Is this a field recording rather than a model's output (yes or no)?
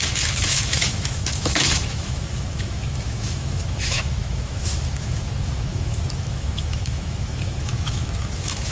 no